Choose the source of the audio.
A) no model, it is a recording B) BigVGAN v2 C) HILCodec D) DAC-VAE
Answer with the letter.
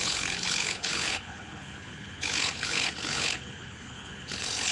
C